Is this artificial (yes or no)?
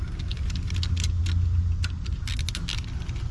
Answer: no